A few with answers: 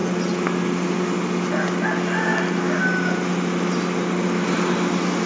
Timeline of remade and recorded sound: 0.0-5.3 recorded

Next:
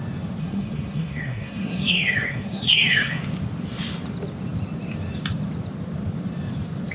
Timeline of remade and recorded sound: 0.0-0.4 recorded; 0.4-3.2 remade; 3.2-6.9 recorded

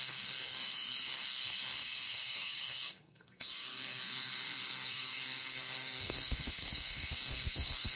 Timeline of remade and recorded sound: 0.0-7.9 remade